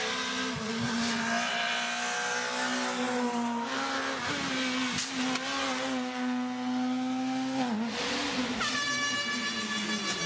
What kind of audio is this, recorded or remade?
recorded